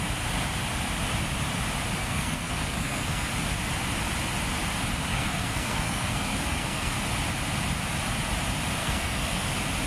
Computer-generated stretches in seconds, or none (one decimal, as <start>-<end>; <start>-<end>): 2.0-3.3; 5.1-6.9; 8.8-9.5